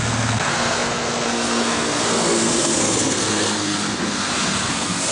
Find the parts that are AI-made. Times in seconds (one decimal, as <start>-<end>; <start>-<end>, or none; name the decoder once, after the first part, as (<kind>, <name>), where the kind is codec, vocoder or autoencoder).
0.0-5.1 (codec, SNAC)